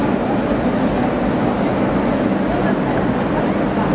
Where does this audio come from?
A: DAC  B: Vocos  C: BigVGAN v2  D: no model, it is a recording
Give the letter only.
D